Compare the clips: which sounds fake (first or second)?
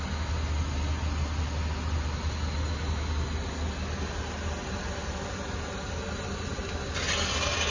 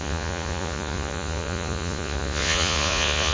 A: second